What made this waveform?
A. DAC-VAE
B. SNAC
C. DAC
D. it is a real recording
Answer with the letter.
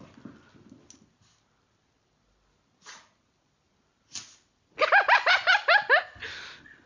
D